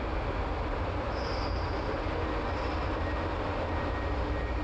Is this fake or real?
real